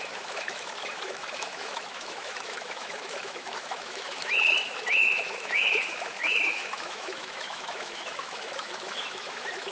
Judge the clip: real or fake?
fake